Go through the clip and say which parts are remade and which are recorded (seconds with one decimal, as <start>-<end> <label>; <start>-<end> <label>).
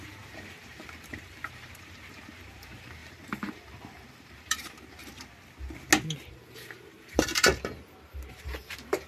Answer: 0.0-5.0 remade; 5.0-6.3 recorded; 6.3-7.5 remade; 7.5-8.3 recorded; 8.3-9.1 remade